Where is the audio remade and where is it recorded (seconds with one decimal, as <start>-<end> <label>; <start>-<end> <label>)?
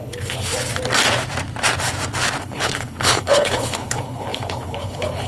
0.0-0.5 remade; 0.5-2.4 recorded; 2.4-5.3 remade